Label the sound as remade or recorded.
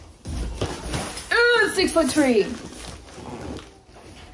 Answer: recorded